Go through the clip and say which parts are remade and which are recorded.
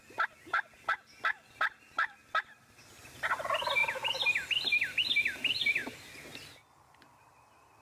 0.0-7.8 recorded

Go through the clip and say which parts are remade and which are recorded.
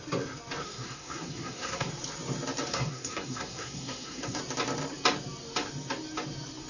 0.0-0.6 recorded; 0.6-1.9 remade; 1.9-2.7 recorded; 2.7-4.4 remade; 4.4-6.7 recorded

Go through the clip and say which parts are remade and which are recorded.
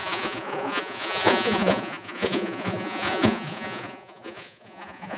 0.0-5.2 remade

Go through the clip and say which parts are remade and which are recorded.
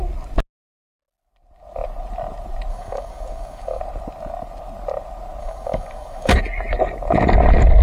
0.0-2.7 recorded; 2.7-3.8 remade; 3.8-5.4 recorded; 5.4-6.4 remade; 6.4-7.8 recorded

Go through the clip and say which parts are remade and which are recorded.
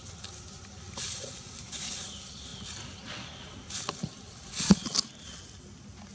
0.0-6.1 recorded